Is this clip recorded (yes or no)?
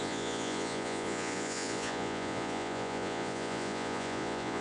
no